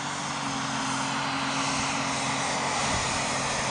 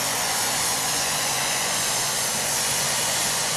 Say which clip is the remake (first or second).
second